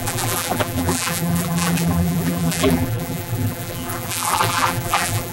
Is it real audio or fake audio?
fake